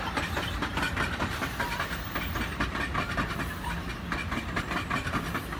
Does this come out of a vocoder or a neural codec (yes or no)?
no